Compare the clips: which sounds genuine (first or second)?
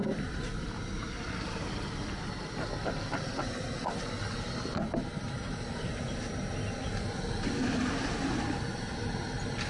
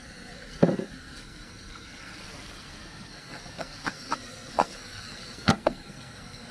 first